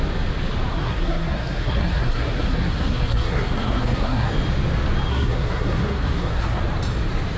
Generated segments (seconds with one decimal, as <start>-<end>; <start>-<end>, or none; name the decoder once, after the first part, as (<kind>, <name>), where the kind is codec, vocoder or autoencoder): 0.7-4.3 (codec, SNAC); 5.1-6.6